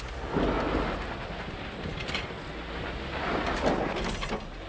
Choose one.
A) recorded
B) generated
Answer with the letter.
A